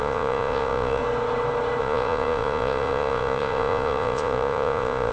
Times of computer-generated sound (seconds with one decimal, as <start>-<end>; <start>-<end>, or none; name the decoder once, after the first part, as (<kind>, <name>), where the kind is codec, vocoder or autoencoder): 0.0-1.0 (vocoder, Vocos); 1.8-5.1